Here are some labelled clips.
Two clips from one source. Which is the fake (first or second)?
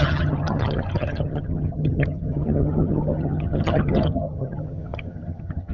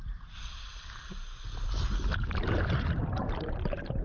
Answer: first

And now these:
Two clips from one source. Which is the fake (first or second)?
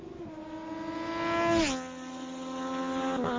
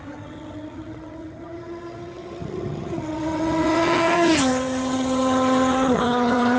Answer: second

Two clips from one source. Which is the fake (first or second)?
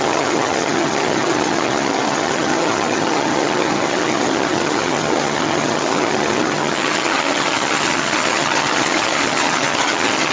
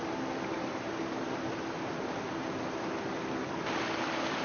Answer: first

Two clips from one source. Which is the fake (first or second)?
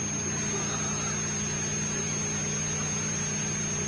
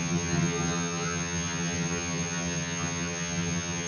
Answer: second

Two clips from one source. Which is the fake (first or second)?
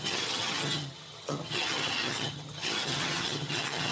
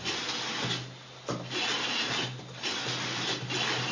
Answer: first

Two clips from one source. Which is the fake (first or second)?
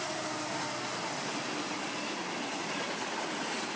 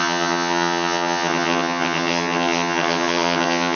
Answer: second